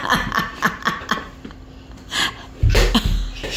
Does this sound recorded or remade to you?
recorded